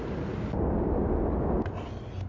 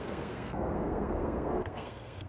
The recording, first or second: first